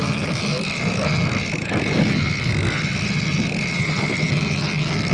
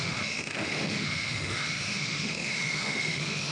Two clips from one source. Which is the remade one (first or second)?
second